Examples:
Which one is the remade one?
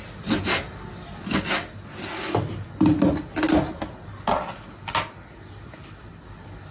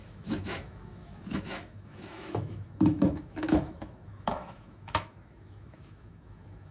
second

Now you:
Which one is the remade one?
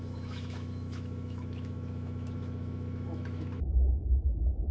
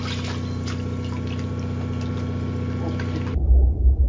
first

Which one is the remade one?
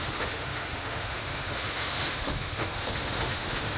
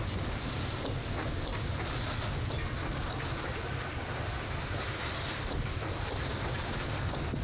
first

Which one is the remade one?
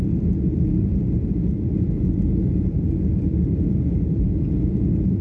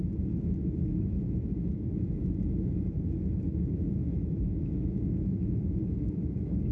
second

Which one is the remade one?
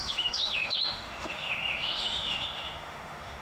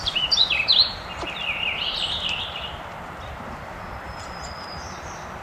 first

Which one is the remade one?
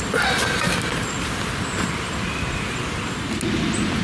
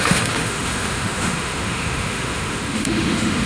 second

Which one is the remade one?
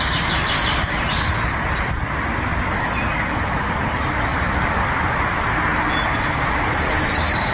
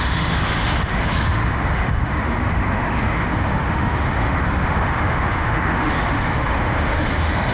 second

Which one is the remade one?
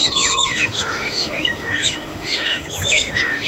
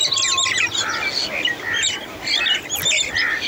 first